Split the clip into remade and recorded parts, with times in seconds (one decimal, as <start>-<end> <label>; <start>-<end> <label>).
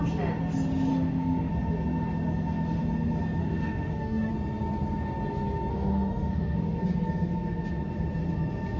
0.0-0.9 recorded; 0.9-1.5 remade; 1.5-3.4 recorded; 3.4-4.3 remade; 4.3-5.7 recorded; 5.7-6.8 remade; 6.8-8.8 recorded